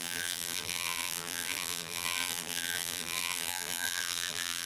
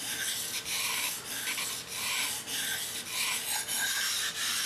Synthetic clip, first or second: first